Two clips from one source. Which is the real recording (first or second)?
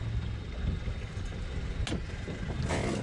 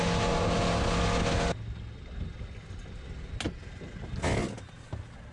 second